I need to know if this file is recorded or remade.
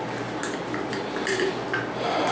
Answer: recorded